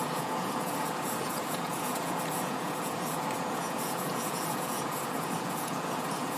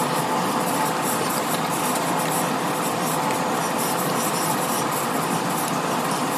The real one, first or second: second